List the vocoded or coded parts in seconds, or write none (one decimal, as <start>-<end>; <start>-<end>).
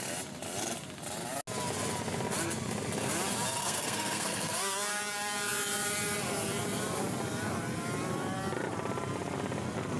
3.6-5.0